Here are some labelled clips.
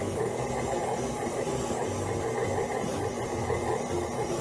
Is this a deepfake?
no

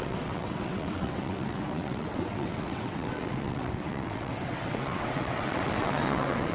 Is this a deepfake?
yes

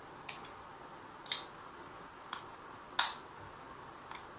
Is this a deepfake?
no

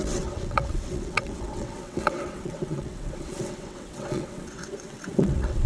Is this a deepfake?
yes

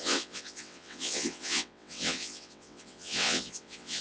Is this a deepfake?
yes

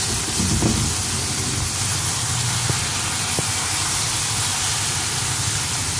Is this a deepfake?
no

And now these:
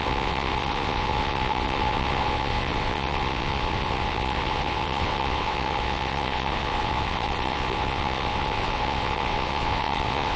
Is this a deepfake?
yes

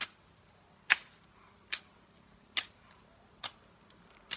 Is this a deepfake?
no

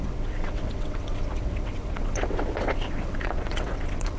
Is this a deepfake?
yes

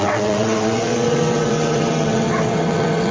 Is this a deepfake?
yes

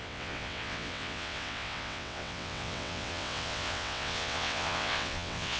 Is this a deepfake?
yes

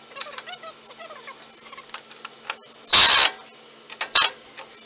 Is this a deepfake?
no